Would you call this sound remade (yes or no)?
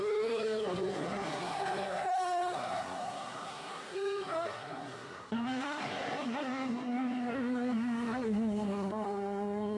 yes